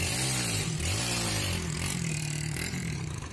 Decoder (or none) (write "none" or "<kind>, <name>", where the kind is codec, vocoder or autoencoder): vocoder, BigVGAN v2